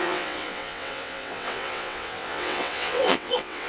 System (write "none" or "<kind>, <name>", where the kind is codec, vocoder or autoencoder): vocoder, WaveNeXt